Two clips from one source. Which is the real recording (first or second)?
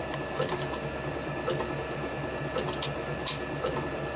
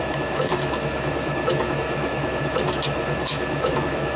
first